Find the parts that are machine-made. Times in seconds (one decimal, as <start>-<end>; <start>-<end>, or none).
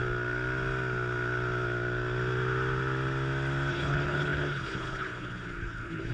3.7-6.1